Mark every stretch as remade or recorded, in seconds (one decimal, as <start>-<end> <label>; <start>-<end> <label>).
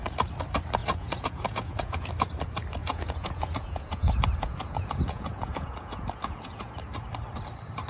0.0-0.8 recorded; 0.8-2.1 remade; 2.1-2.8 recorded; 2.8-6.7 remade; 6.7-7.9 recorded